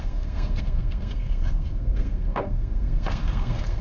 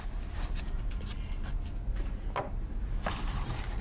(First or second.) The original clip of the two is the second